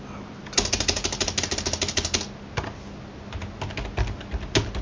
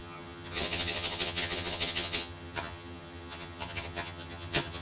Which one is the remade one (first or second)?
second